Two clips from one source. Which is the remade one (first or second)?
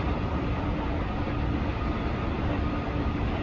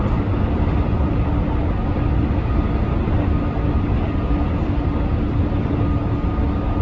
first